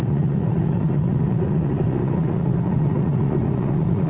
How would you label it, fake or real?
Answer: fake